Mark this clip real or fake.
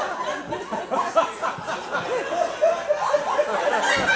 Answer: real